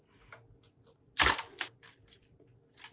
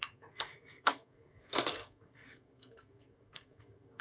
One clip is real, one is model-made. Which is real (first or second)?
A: first